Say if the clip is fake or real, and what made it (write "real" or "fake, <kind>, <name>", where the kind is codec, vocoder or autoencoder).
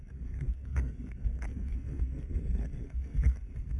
fake, codec, SNAC